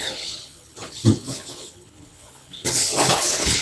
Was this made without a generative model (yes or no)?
no